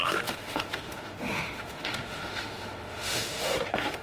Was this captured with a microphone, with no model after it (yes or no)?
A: no